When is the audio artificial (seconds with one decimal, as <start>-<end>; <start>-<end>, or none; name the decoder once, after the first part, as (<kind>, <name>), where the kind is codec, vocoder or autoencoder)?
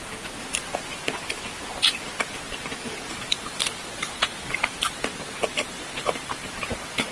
3.3-6.5 (vocoder, BigVGAN v2)